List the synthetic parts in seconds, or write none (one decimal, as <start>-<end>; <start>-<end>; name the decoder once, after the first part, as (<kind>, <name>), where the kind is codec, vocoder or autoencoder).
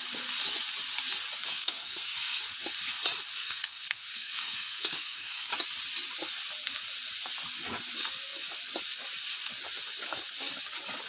1.5-2.4 (codec, SNAC); 3.4-5.5